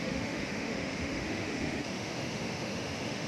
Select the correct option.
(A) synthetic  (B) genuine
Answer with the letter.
A